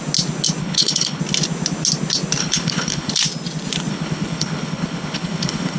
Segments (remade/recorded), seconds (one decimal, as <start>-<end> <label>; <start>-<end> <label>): 0.0-0.6 recorded; 0.6-1.2 remade; 1.2-2.4 recorded; 2.4-3.1 remade; 3.1-3.9 recorded; 3.9-5.8 remade